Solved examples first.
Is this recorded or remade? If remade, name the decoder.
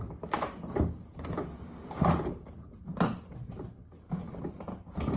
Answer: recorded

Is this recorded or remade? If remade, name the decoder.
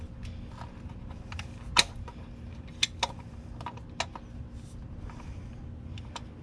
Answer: recorded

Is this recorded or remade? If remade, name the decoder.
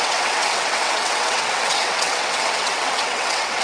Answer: remade, vocoder, WaveNeXt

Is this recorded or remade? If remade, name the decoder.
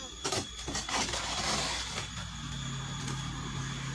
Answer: recorded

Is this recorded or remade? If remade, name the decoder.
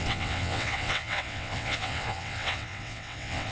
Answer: remade, vocoder, WaveNeXt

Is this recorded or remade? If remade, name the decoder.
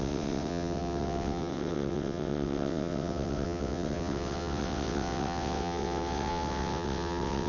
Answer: remade, vocoder, WaveNeXt